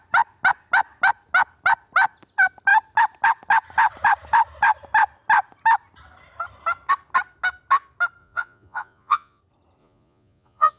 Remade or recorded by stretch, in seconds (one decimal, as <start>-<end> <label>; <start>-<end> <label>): 0.0-8.2 recorded; 8.2-9.4 remade; 9.4-9.8 recorded; 9.8-10.8 remade